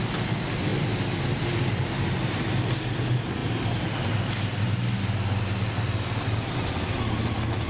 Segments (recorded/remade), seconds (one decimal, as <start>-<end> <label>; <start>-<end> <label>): 0.0-7.7 recorded